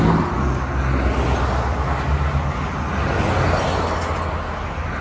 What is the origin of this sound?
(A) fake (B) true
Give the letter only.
B